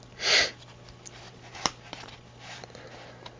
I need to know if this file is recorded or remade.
recorded